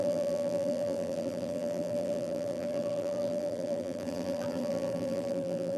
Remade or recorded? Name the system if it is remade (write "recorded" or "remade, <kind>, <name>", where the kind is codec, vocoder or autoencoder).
remade, vocoder, BigVGAN v2